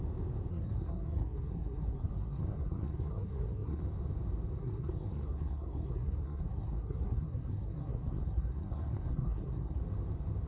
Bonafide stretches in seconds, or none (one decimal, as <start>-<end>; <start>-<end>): 0.0-0.5; 3.8-4.6; 9.8-10.5